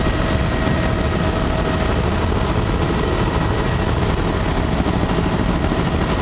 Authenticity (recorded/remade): recorded